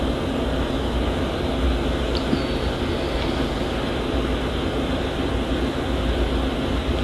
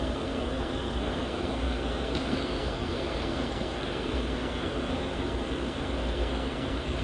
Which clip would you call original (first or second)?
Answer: first